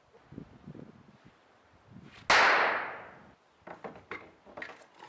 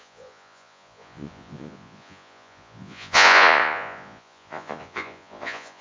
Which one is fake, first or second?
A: second